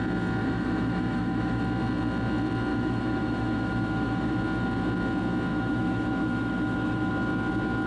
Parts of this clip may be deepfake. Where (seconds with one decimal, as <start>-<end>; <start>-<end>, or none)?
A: 0.4-1.6; 2.7-4.3; 5.5-7.1